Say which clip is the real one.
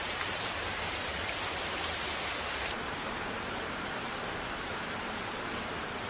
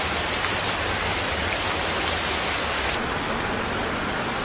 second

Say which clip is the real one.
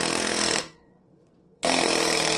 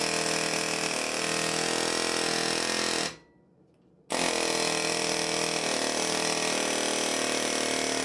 second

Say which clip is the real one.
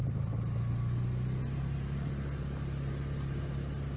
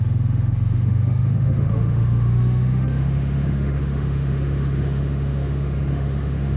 first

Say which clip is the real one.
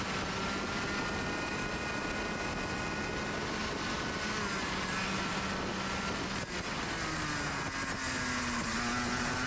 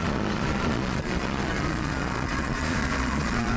first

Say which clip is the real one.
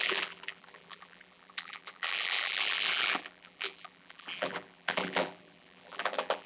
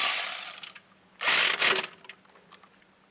second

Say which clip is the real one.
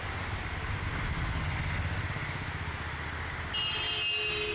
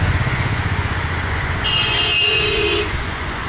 first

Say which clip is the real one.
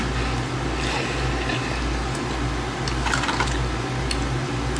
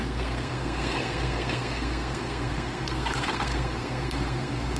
first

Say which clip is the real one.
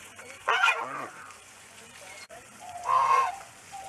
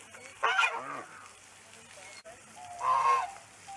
second